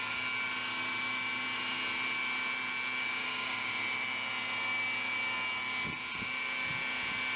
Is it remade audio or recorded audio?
recorded